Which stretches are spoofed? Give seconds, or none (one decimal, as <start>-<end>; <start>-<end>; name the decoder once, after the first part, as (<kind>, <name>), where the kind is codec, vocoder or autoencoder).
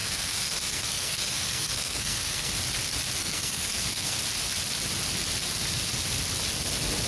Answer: 0.0-2.5 (codec, SNAC); 3.2-4.2